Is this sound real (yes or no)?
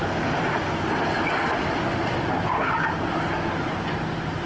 yes